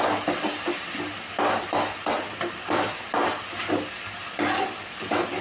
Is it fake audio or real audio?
real